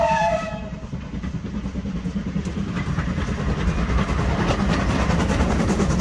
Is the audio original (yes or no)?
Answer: yes